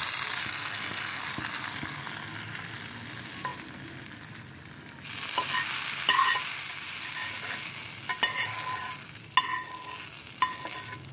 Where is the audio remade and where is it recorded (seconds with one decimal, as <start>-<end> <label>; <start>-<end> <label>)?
0.0-0.4 recorded; 0.4-1.2 remade; 1.2-11.1 recorded